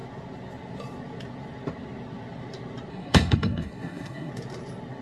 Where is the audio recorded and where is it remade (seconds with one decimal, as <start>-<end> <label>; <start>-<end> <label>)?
0.0-2.9 recorded; 2.9-4.3 remade; 4.3-5.0 recorded